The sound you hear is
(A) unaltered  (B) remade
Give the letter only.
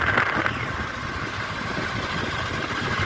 A